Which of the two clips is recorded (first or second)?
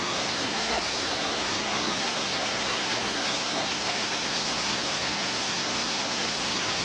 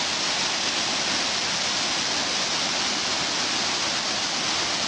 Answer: second